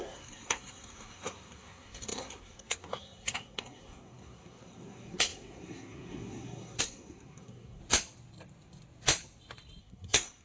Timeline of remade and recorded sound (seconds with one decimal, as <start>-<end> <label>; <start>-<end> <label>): 0.0-7.8 remade; 7.8-9.8 recorded; 9.8-10.4 remade